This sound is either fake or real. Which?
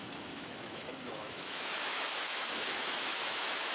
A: fake